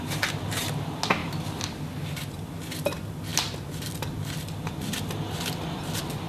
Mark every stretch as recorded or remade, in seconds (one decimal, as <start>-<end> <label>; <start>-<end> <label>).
0.0-6.3 recorded